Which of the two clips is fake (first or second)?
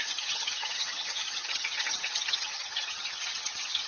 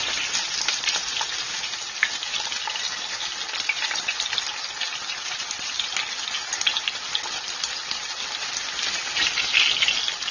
first